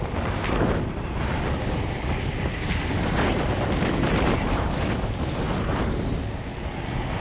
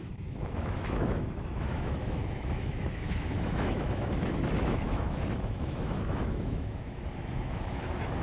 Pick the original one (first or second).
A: first